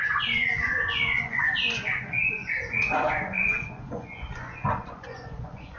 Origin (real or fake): fake